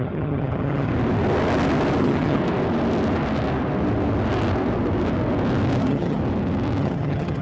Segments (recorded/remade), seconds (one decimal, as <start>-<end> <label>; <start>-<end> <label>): 0.0-0.9 remade; 0.9-2.0 recorded; 2.0-2.4 remade; 2.4-5.8 recorded; 5.8-6.2 remade; 6.2-6.8 recorded; 6.8-7.4 remade